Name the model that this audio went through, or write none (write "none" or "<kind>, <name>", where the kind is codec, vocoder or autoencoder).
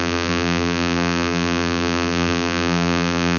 vocoder, BigVGAN v2